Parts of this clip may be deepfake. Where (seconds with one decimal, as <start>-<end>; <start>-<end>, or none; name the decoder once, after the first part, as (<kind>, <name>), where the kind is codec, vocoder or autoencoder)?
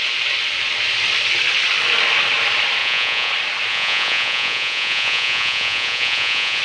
2.8-3.3 (vocoder, Vocos); 3.7-6.6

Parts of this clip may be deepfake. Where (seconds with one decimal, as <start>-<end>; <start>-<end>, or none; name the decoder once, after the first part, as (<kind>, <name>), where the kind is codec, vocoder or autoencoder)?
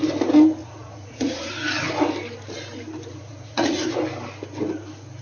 0.6-1.5 (vocoder, Vocos); 3.1-4.0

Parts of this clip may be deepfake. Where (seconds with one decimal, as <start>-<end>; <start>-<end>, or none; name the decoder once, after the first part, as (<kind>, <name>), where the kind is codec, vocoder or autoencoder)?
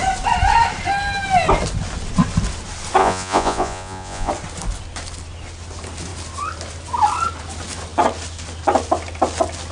3.0-4.3 (vocoder, Vocos)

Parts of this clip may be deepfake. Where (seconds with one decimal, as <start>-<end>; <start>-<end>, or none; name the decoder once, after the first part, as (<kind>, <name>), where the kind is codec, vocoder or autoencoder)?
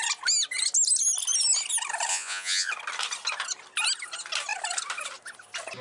2.1-2.7 (vocoder, Vocos)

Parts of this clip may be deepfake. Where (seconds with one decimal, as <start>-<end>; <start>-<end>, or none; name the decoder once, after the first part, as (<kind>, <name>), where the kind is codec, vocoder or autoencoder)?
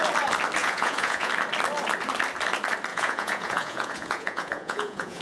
0.6-1.3 (vocoder, Vocos); 2.9-5.2